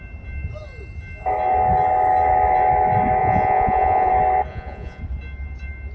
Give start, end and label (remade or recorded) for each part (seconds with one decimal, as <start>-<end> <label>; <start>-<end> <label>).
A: 0.0-3.2 recorded; 3.2-4.1 remade; 4.1-4.5 recorded; 4.5-5.0 remade; 5.0-5.9 recorded